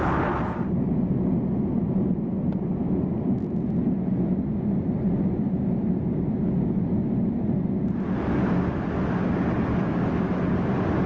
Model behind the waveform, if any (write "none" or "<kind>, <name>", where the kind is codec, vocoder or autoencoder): none